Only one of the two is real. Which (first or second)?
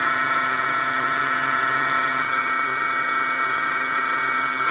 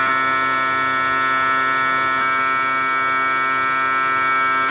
second